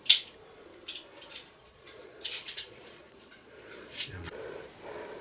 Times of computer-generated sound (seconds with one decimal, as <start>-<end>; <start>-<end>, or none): 1.6-4.7